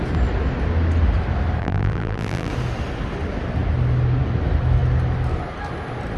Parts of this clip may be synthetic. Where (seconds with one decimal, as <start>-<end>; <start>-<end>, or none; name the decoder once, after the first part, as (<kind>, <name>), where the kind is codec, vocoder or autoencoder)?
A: 1.6-2.5 (vocoder, BigVGAN v2)